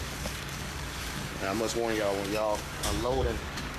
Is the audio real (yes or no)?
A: no